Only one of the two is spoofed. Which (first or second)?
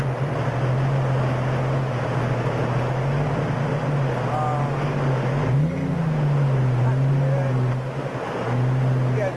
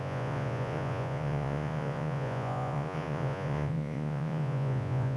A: second